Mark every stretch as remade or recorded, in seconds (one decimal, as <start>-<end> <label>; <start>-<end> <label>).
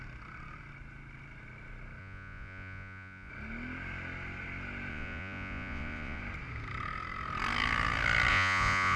0.0-2.0 recorded; 2.0-3.3 remade; 3.3-4.9 recorded; 4.9-6.2 remade; 6.2-8.3 recorded; 8.3-9.0 remade